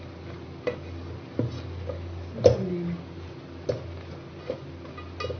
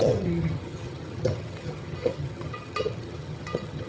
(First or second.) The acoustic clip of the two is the first